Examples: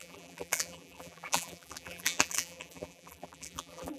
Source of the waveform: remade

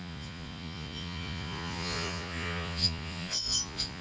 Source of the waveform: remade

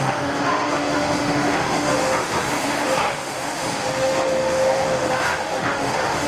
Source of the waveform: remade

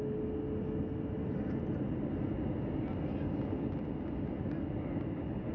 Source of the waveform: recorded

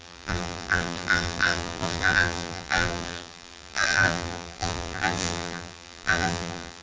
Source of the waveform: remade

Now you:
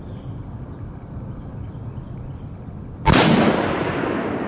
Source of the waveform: recorded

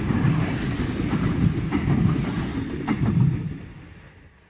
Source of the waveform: recorded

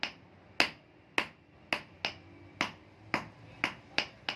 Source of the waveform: recorded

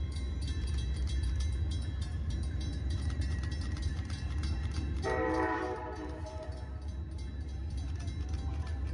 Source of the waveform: remade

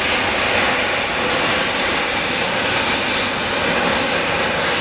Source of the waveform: recorded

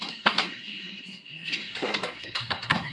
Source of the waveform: remade